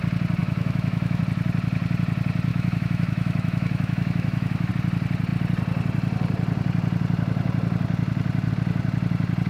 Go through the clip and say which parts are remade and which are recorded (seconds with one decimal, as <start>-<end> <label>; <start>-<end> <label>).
0.0-0.4 recorded; 0.4-1.2 remade; 1.2-2.5 recorded; 2.5-4.7 remade; 4.7-9.5 recorded